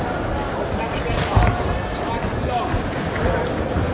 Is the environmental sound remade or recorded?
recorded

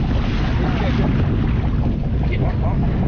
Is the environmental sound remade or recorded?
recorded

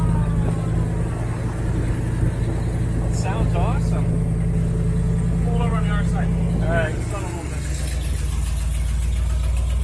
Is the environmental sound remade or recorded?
recorded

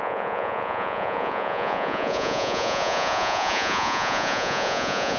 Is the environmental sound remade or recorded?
remade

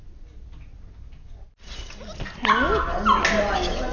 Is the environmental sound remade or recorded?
recorded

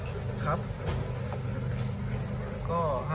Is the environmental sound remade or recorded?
recorded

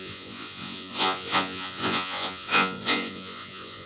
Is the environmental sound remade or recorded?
remade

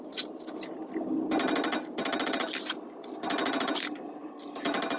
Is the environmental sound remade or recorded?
recorded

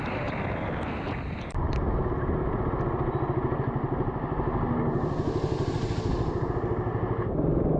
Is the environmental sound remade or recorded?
recorded